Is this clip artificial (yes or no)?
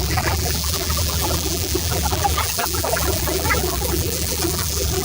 yes